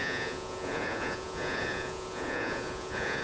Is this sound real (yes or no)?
no